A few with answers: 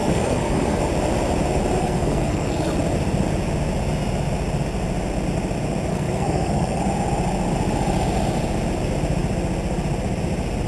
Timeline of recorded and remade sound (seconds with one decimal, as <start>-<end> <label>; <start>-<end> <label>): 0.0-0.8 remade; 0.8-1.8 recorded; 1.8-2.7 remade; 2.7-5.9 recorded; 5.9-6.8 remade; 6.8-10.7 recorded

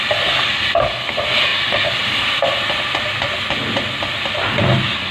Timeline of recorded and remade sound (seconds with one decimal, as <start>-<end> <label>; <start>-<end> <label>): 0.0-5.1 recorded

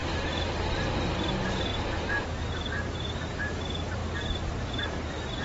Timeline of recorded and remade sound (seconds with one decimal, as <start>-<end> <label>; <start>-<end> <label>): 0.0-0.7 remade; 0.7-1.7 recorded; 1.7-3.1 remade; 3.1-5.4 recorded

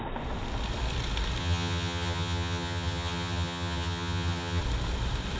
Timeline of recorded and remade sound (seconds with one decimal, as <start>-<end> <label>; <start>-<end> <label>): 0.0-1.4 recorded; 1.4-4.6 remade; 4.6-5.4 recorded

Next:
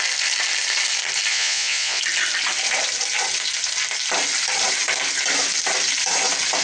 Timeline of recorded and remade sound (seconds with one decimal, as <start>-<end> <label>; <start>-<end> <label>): 0.0-1.3 recorded; 1.3-2.0 remade; 2.0-6.6 recorded